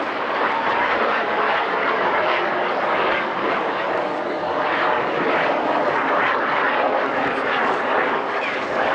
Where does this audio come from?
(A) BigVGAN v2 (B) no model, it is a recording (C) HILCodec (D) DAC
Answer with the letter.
D